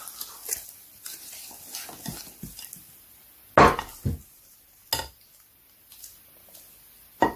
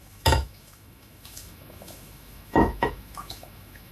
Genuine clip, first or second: first